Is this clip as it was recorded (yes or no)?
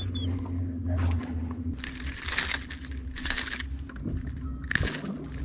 yes